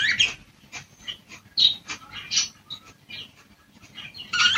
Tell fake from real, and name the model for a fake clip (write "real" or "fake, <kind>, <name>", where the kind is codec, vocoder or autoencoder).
real